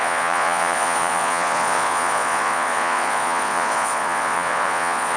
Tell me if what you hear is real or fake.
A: fake